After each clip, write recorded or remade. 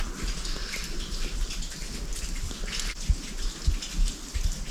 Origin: recorded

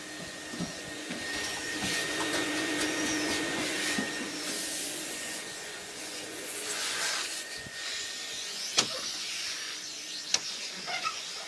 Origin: remade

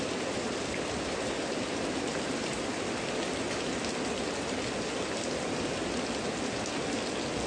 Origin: recorded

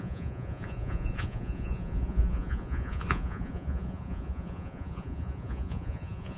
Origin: remade